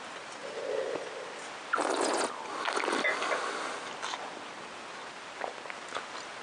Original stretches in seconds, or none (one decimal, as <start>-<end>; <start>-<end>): 0.0-6.4